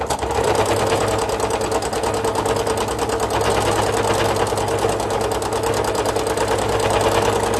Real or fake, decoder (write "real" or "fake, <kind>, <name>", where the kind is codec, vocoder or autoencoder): real